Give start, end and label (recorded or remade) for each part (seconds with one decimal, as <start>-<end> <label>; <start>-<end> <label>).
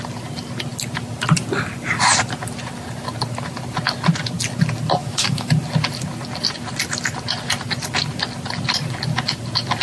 0.0-5.0 recorded; 5.0-5.5 remade; 5.5-9.8 recorded